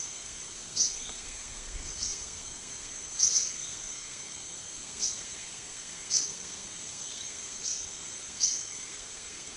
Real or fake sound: fake